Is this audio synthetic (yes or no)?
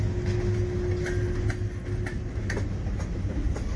no